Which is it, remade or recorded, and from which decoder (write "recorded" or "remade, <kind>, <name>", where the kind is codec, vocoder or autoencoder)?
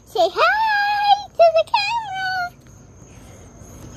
remade, vocoder, BigVGAN v2